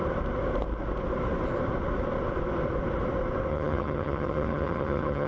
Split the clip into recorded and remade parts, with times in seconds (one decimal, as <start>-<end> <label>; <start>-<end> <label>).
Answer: 0.0-3.5 recorded; 3.5-5.3 remade